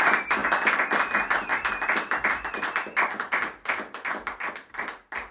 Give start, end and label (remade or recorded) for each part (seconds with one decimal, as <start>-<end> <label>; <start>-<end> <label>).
0.0-5.3 recorded